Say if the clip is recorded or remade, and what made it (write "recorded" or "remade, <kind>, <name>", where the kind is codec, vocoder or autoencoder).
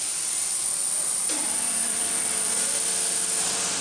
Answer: remade, vocoder, BigVGAN v2